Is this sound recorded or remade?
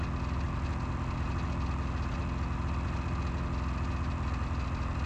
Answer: recorded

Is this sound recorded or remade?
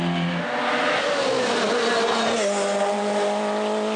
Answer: recorded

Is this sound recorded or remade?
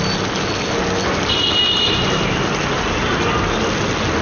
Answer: recorded